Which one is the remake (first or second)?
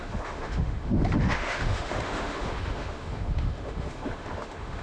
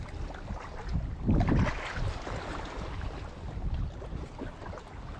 first